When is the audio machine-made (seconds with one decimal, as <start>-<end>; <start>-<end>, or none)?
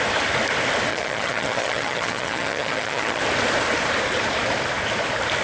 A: 0.9-3.2